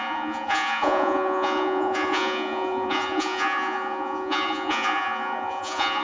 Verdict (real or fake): fake